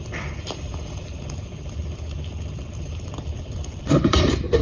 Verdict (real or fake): fake